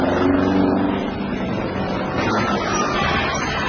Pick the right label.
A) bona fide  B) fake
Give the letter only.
A